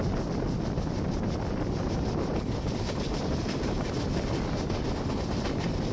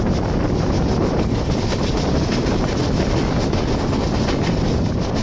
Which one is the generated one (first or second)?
first